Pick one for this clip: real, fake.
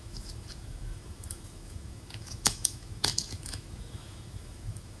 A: fake